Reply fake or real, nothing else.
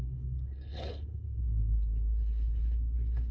fake